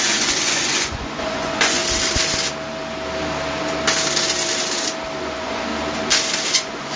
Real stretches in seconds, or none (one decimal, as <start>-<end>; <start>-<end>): 1.8-5.2; 5.7-6.5